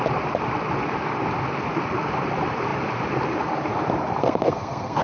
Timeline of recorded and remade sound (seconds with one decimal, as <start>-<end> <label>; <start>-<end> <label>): 0.0-4.2 recorded; 4.2-5.0 remade